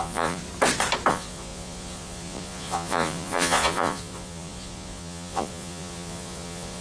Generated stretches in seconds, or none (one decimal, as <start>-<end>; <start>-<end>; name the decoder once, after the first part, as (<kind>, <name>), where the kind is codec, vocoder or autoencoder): 0.0-0.4 (vocoder, Vocos); 1.1-6.8